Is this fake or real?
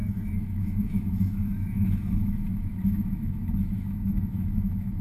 fake